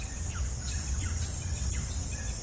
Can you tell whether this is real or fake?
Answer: real